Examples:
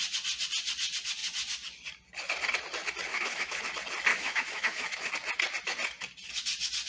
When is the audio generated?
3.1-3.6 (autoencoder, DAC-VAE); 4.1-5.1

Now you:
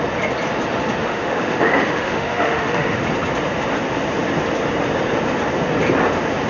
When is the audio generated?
1.0-3.0 (autoencoder, DAC-VAE)

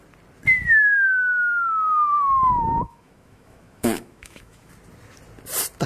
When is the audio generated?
1.2-4.7 (autoencoder, DAC-VAE)

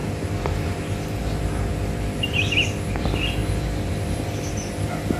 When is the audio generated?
none